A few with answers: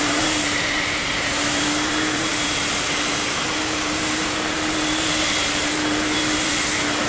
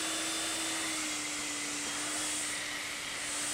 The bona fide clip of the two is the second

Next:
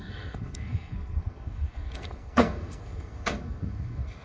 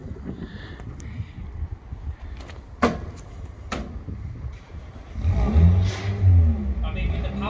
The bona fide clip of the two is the second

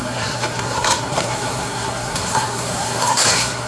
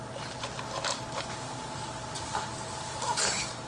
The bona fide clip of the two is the second